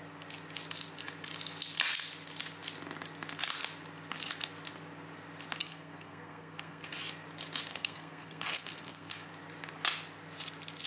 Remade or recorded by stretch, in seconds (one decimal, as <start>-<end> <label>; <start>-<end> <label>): 0.0-5.6 recorded; 5.6-6.9 remade; 6.9-7.7 recorded; 7.7-9.3 remade; 9.3-10.9 recorded